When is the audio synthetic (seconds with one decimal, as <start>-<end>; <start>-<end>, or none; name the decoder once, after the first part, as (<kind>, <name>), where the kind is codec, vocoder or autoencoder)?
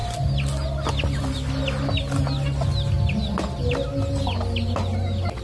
none